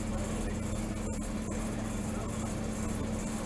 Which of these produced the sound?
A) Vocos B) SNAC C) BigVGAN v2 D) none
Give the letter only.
D